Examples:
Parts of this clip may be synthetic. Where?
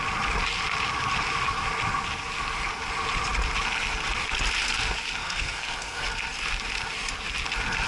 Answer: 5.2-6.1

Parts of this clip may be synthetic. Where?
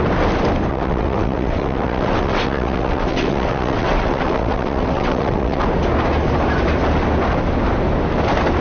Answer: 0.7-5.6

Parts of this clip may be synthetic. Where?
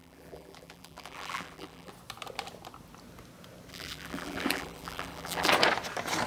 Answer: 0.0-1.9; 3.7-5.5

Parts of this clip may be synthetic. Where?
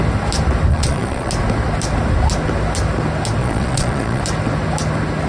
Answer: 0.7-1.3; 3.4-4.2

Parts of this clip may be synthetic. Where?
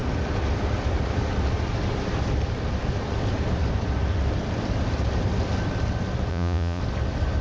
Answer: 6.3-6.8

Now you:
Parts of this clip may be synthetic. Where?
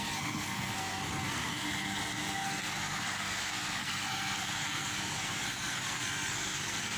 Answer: 0.0-7.0